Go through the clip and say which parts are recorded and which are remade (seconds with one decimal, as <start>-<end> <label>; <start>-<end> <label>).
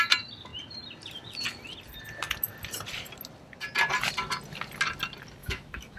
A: 0.0-5.4 recorded; 5.4-6.0 remade